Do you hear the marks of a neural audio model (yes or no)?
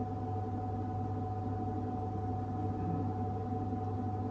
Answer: no